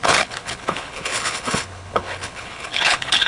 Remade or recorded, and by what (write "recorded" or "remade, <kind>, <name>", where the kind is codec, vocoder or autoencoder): remade, codec, HILCodec